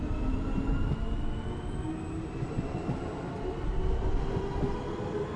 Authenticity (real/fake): real